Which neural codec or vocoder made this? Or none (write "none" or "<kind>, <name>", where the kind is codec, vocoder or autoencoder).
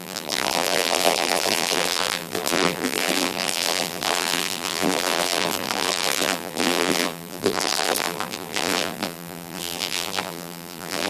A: vocoder, BigVGAN v2